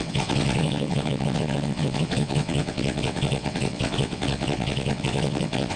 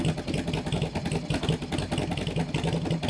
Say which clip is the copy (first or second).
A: first